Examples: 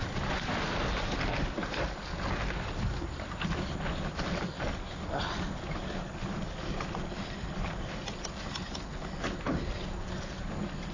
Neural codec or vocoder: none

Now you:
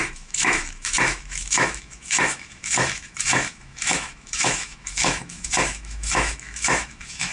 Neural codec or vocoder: autoencoder, DAC-VAE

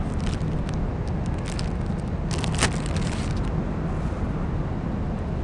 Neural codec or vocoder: none